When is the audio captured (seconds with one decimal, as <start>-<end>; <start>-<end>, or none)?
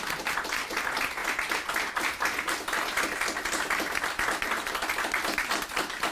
0.0-6.1